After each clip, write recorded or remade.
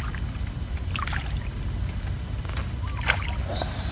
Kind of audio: recorded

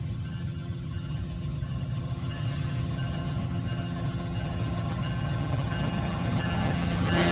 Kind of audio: remade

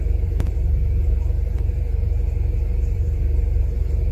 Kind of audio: remade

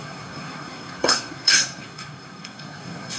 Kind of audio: remade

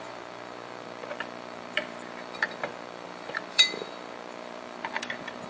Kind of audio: remade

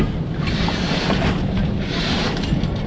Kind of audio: recorded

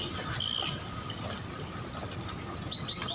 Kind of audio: recorded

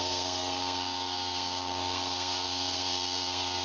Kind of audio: remade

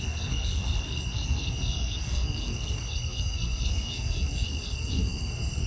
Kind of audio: remade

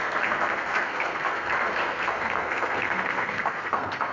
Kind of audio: remade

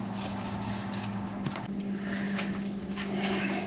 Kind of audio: remade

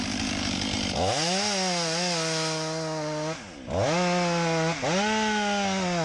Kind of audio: recorded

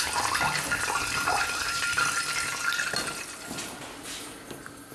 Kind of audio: recorded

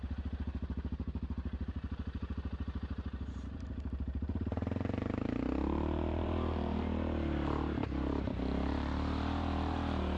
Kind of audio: remade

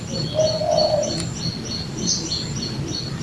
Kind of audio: recorded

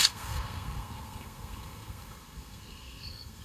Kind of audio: remade